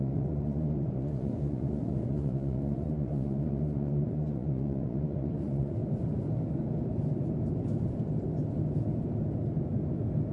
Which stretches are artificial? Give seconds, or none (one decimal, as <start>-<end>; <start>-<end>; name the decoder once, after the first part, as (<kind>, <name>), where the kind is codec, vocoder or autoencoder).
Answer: 0.0-5.8 (vocoder, Vocos)